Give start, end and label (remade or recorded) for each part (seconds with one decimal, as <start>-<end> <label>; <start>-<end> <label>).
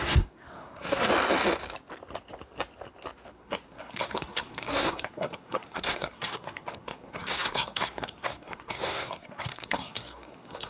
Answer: 0.0-1.1 remade; 1.1-3.3 recorded; 3.3-10.7 remade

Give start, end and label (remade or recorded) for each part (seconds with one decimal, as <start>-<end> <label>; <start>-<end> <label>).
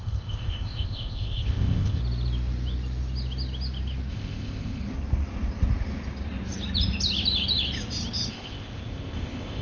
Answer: 0.0-2.0 remade; 2.0-4.1 recorded; 4.1-4.8 remade; 4.8-8.3 recorded; 8.3-9.6 remade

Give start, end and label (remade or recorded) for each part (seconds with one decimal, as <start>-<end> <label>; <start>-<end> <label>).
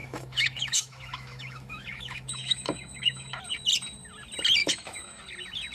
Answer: 0.0-3.4 remade; 3.4-4.6 recorded; 4.6-5.2 remade; 5.2-5.7 recorded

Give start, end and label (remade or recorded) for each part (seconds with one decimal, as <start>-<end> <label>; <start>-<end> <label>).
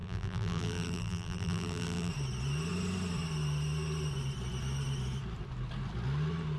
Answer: 0.0-2.1 remade; 2.1-6.6 recorded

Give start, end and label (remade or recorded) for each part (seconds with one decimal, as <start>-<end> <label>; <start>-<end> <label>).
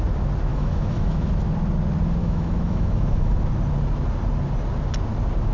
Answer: 0.0-0.5 recorded; 0.5-1.3 remade; 1.3-2.2 recorded; 2.2-3.4 remade; 3.4-5.5 recorded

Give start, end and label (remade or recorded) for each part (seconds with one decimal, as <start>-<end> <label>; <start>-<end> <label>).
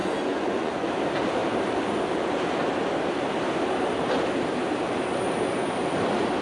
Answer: 0.0-0.9 remade; 0.9-6.4 recorded